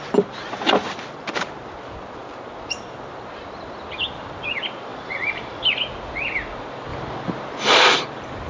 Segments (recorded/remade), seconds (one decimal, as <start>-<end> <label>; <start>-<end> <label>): 0.0-2.2 remade; 2.2-4.2 recorded; 4.2-8.5 remade